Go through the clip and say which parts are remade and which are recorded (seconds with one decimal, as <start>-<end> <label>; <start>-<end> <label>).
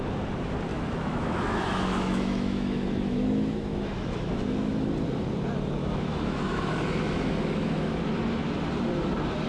0.0-0.7 recorded; 0.7-4.9 remade; 4.9-5.8 recorded; 5.8-8.0 remade; 8.0-9.5 recorded